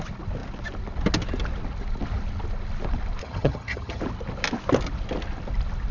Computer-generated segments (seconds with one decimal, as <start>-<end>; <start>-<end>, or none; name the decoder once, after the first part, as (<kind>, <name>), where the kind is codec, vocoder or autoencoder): 3.2-4.0 (vocoder, HiFi-GAN)